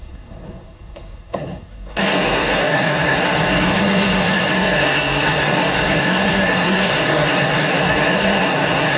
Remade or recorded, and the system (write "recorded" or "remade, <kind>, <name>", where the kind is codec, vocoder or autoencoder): remade, codec, SNAC